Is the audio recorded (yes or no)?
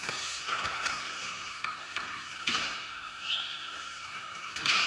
no